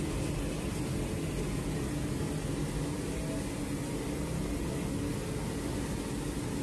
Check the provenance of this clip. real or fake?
real